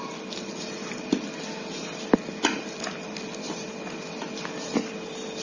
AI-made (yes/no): no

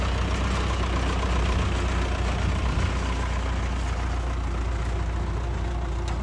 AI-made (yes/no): no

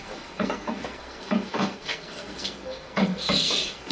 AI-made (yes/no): yes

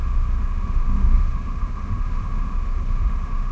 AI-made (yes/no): yes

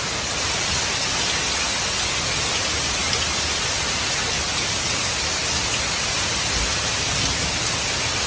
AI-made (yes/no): no